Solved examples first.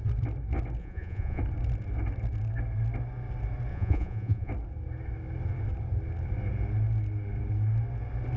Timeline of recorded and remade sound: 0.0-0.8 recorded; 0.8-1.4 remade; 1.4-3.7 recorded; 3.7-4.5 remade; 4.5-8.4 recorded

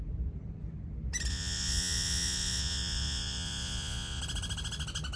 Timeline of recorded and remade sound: 0.0-1.3 recorded; 1.3-4.2 remade; 4.2-5.2 recorded

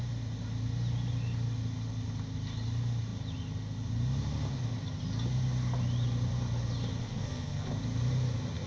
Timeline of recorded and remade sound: 0.0-7.0 recorded; 7.0-7.7 remade; 7.7-8.7 recorded

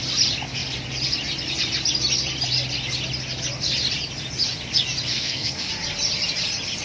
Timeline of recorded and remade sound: 0.0-5.1 recorded; 5.1-5.7 remade; 5.7-6.8 recorded

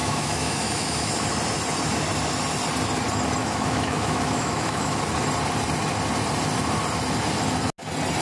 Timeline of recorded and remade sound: 0.0-1.1 remade; 1.1-3.4 recorded; 3.4-5.0 remade; 5.0-8.2 recorded

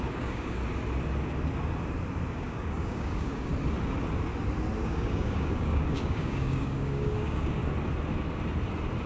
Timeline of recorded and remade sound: 0.0-0.6 remade; 0.6-2.3 recorded; 2.3-3.5 remade; 3.5-4.8 recorded; 4.8-7.6 remade; 7.6-9.1 recorded

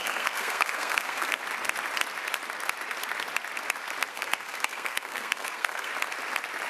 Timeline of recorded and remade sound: 0.0-1.4 remade; 1.4-4.1 recorded; 4.1-5.9 remade; 5.9-6.7 recorded

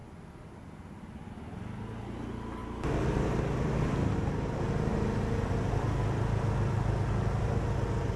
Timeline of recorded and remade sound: 0.0-2.6 recorded; 2.6-3.8 remade; 3.8-8.2 recorded